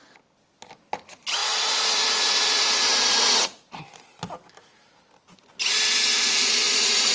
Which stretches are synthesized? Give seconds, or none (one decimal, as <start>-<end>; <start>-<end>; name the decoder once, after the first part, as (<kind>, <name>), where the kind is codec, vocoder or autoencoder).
1.4-3.8 (vocoder, Vocos); 6.1-7.1